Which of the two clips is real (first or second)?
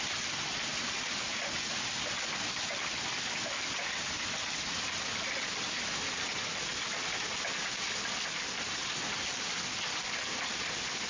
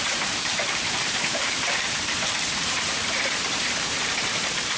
first